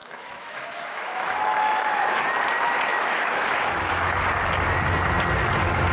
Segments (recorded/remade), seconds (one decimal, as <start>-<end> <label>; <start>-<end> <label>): 0.0-2.2 remade; 2.2-2.9 recorded; 2.9-4.2 remade; 4.2-5.9 recorded